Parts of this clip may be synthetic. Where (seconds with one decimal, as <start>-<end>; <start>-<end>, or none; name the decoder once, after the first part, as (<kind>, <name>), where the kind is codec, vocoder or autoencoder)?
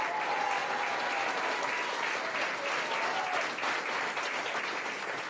none